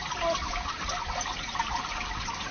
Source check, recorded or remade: recorded